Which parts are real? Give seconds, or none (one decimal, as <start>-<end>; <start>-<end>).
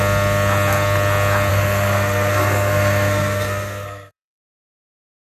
0.0-1.5; 4.5-5.3